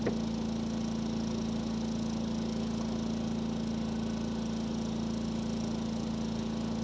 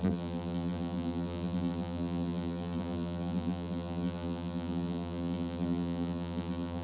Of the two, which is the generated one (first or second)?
second